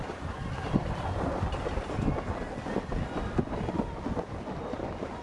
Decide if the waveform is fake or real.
real